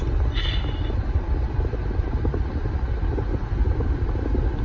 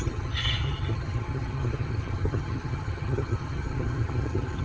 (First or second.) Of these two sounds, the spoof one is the second